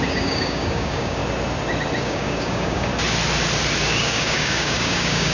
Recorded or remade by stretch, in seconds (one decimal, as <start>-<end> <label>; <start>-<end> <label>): 0.0-1.2 remade; 1.2-2.0 recorded; 2.0-2.9 remade; 2.9-3.9 recorded; 3.9-5.3 remade